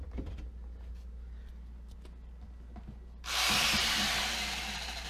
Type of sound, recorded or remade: recorded